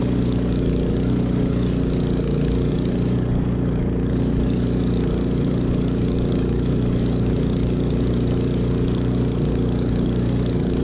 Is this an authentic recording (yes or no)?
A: no